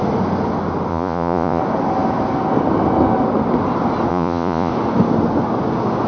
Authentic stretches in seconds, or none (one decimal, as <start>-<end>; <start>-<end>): 0.0-0.9; 1.6-4.1; 4.7-6.1